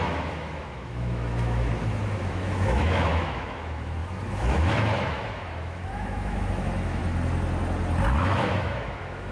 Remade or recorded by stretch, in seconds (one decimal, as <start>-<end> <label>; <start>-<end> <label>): 0.0-7.0 remade; 7.0-8.2 recorded; 8.2-9.3 remade